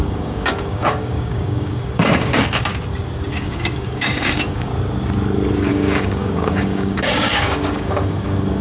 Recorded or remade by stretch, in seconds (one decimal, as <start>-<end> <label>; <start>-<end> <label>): 0.0-2.7 remade; 2.7-3.3 recorded; 3.3-4.7 remade; 4.7-5.7 recorded; 5.7-8.6 remade